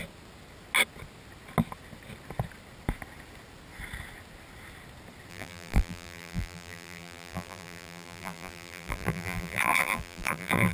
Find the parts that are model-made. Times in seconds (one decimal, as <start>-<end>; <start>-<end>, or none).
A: 5.3-10.7

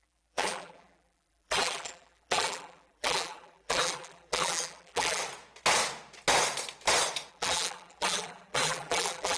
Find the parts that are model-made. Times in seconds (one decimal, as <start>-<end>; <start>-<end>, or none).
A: 0.0-5.2; 7.3-9.4

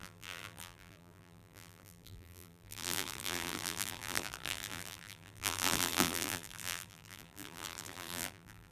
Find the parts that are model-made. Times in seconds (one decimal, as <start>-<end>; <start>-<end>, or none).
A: 0.0-8.7

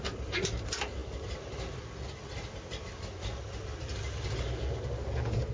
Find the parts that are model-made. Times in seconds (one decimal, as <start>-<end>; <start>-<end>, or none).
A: none

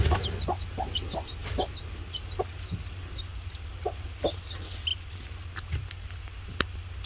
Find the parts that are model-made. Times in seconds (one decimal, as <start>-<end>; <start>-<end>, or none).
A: none

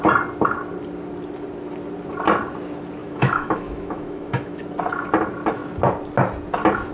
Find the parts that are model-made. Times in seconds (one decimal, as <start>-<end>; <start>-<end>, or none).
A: 3.0-4.6

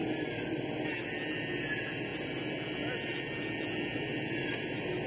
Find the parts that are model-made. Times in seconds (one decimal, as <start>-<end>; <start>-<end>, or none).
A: none